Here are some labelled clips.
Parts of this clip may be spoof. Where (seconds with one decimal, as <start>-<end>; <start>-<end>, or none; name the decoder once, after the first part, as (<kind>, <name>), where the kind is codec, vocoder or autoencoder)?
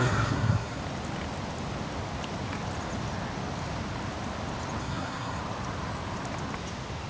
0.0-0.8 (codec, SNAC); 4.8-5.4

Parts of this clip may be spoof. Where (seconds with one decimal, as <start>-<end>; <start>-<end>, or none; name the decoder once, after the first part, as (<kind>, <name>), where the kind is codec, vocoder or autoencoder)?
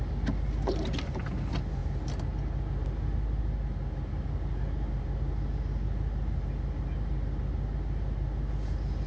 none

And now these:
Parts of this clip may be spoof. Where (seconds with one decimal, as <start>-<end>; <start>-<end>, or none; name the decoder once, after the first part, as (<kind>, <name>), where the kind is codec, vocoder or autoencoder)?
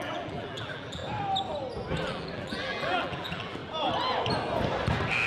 0.0-1.0 (vocoder, BigVGAN v2); 2.0-3.6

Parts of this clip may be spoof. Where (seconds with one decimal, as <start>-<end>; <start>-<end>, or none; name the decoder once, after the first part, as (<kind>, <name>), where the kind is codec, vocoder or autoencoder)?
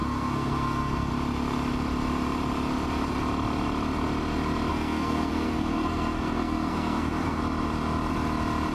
0.0-1.1 (codec, SNAC); 4.7-7.4